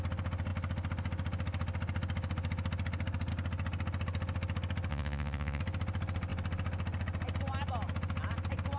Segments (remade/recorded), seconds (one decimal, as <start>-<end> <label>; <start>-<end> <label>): 0.0-4.9 recorded; 4.9-5.6 remade; 5.6-8.8 recorded

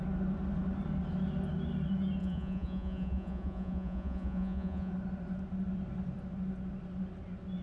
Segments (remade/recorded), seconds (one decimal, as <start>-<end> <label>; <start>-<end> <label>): 0.0-2.2 recorded; 2.2-4.9 remade; 4.9-7.6 recorded

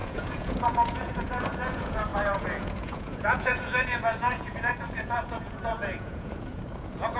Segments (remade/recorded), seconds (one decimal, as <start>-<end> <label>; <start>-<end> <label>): 0.0-7.2 remade

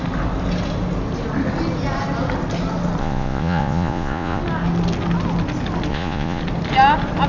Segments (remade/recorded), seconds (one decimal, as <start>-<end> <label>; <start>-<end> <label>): 0.0-3.0 recorded; 3.0-4.4 remade; 4.4-5.9 recorded; 5.9-6.4 remade; 6.4-7.3 recorded

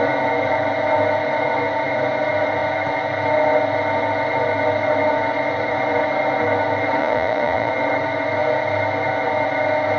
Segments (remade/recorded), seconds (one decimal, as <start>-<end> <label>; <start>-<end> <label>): 0.0-7.0 recorded; 7.0-7.7 remade; 7.7-10.0 recorded

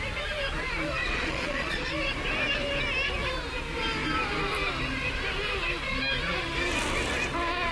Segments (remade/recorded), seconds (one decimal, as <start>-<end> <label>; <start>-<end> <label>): 0.0-1.0 recorded; 1.0-1.9 remade; 1.9-7.7 recorded

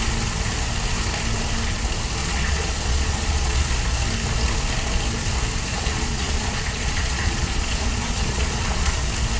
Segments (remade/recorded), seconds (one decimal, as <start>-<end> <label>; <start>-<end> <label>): 0.0-2.2 recorded; 2.2-3.7 remade; 3.7-5.7 recorded; 5.7-9.0 remade; 9.0-9.4 recorded

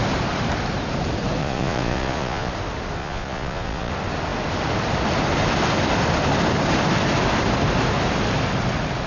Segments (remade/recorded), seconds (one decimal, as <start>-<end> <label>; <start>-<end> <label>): 0.0-1.4 recorded; 1.4-2.5 remade; 2.5-3.0 recorded; 3.0-3.9 remade; 3.9-9.1 recorded